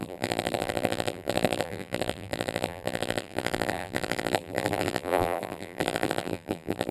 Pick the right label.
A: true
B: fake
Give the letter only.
B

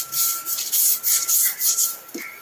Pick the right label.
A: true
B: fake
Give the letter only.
A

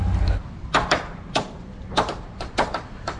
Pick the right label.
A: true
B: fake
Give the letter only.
B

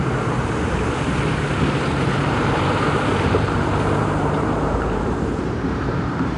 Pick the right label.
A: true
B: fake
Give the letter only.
B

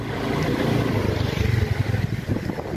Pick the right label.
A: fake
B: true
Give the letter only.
A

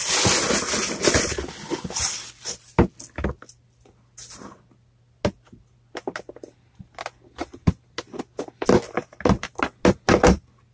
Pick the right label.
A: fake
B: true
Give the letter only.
B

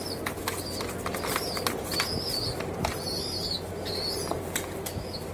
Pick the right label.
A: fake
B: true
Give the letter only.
B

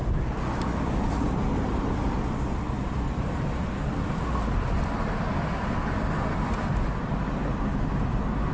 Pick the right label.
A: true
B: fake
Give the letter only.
A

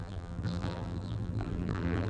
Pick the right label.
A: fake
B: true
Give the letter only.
A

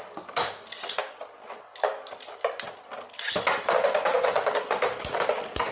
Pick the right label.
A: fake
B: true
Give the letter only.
B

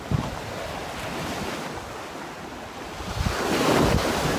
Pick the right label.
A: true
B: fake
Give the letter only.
A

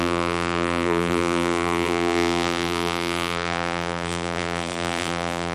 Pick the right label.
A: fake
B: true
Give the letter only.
A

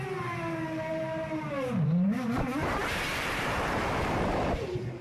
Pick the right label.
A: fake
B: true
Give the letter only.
A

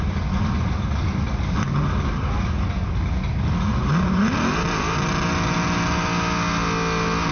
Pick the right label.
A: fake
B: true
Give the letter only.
B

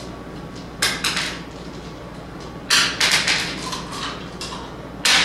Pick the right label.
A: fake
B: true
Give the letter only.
B